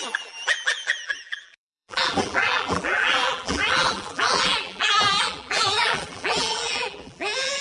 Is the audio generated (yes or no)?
yes